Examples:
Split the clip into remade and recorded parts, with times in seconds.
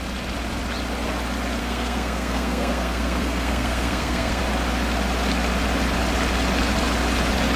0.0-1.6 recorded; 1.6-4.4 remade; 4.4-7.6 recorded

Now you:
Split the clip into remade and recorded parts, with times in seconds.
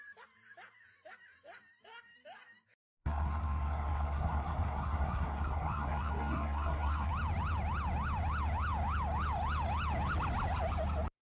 0.0-3.0 recorded; 3.0-7.1 remade; 7.1-11.2 recorded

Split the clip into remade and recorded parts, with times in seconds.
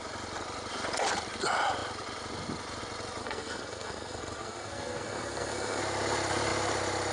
0.0-3.2 recorded; 3.2-5.8 remade; 5.8-7.1 recorded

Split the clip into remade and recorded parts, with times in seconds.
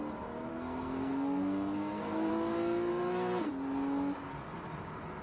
0.0-0.5 recorded; 0.5-2.3 remade; 2.3-2.9 recorded; 2.9-3.5 remade; 3.5-5.2 recorded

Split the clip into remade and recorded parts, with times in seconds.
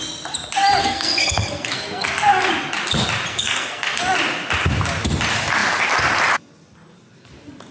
0.0-0.8 recorded; 0.8-2.5 remade; 2.5-3.3 recorded; 3.3-4.0 remade; 4.0-7.7 recorded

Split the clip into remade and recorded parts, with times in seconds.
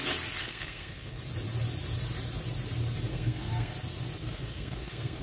0.0-0.4 recorded; 0.4-1.2 remade; 1.2-3.1 recorded; 3.1-3.7 remade; 3.7-4.2 recorded; 4.2-5.2 remade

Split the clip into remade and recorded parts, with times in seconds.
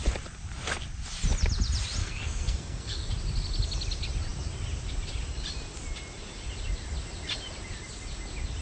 0.0-2.0 recorded; 2.0-3.1 remade; 3.1-8.6 recorded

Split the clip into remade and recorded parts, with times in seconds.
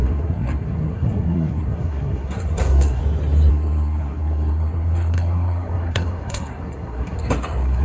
0.0-3.0 remade; 3.0-3.5 recorded; 3.5-7.8 remade